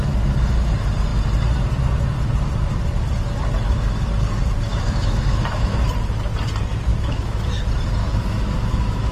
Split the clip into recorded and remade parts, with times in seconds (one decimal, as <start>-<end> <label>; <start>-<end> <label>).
0.0-4.7 recorded; 4.7-5.8 remade; 5.8-6.9 recorded; 6.9-7.4 remade; 7.4-8.0 recorded; 8.0-9.1 remade

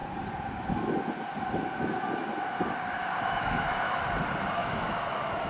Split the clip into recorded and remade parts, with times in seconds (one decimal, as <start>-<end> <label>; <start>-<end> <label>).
0.0-3.0 recorded; 3.0-4.1 remade; 4.1-4.6 recorded; 4.6-5.5 remade